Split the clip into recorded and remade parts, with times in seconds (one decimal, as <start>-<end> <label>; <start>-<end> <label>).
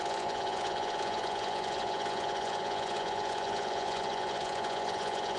0.0-5.4 remade